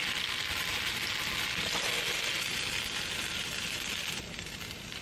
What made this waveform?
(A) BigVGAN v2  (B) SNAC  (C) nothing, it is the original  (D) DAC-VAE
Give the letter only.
C